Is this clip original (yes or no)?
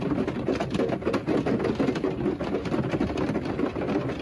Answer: yes